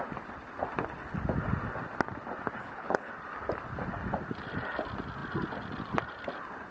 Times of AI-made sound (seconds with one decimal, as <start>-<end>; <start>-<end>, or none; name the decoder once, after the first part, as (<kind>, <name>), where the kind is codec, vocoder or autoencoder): 2.6-3.1 (codec, HILCodec)